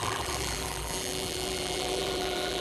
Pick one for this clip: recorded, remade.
remade